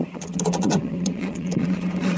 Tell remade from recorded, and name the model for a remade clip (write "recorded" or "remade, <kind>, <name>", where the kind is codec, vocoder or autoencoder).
remade, vocoder, Vocos